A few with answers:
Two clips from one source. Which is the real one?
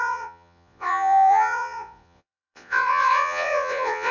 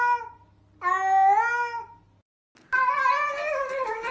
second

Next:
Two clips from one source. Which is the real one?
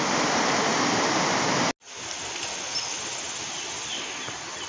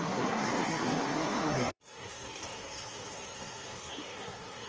first